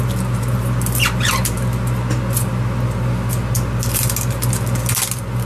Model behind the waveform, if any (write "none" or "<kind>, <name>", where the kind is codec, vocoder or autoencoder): none